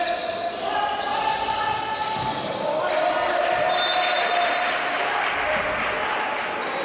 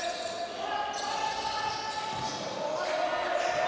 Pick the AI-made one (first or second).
first